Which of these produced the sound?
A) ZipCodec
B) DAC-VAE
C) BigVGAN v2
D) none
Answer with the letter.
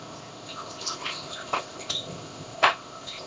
A